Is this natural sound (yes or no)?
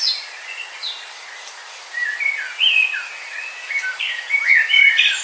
yes